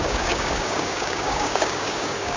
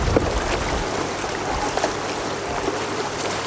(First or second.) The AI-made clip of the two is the first